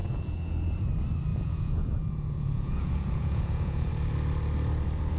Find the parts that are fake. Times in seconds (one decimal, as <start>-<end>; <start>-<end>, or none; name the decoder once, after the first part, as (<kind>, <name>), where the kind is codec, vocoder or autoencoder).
0.0-0.5 (vocoder, Vocos); 1.3-3.9